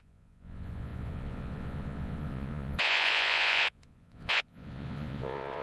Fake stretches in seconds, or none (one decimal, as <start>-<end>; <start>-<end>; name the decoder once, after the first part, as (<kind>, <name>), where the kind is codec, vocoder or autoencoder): 0.0-5.6 (vocoder, Vocos)